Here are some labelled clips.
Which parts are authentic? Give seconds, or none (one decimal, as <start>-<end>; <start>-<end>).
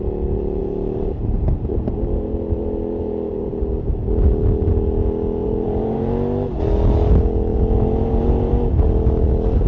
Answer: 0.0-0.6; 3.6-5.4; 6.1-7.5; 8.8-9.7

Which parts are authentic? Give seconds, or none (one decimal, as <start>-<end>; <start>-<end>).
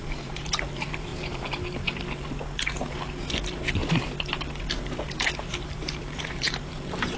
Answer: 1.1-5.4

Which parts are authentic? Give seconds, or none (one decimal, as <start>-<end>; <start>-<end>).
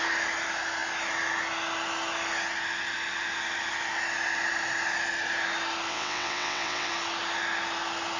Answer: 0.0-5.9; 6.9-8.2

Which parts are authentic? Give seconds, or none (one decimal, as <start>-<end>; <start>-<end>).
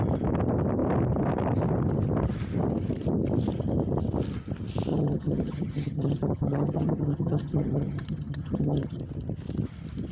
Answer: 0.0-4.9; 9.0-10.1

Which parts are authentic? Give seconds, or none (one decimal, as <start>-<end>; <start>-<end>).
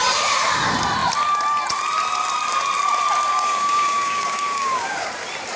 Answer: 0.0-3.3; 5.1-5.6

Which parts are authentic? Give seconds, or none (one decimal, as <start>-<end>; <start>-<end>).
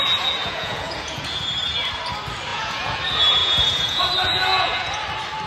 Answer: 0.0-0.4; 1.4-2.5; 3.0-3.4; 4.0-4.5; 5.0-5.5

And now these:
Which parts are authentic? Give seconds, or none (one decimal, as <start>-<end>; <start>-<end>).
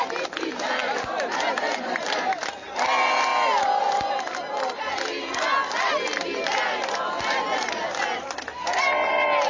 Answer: 0.0-9.5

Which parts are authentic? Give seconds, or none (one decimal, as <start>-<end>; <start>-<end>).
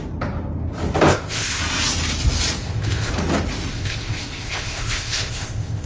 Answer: 0.0-1.1; 1.6-2.6; 3.1-3.7